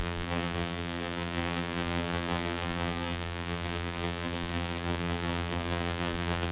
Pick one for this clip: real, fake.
fake